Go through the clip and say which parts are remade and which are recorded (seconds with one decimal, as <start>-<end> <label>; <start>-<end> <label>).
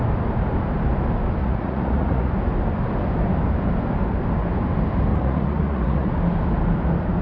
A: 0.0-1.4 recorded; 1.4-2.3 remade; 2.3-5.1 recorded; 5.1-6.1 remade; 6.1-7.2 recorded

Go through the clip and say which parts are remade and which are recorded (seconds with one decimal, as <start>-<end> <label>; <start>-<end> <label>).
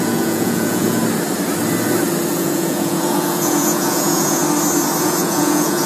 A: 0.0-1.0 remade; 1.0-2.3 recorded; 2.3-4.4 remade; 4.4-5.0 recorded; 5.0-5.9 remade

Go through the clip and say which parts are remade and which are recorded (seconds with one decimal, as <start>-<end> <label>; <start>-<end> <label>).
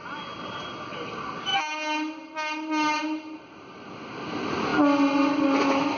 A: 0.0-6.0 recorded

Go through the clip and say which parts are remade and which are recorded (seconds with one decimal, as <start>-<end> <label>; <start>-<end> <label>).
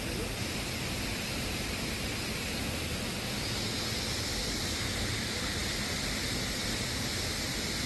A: 0.0-7.9 recorded